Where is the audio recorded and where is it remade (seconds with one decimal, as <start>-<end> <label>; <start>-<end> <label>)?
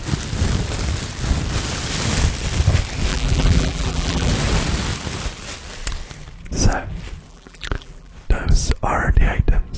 0.0-3.1 recorded; 3.1-4.3 remade; 4.3-7.3 recorded; 7.3-8.1 remade; 8.1-9.8 recorded